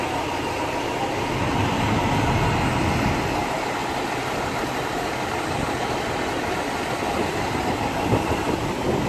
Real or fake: real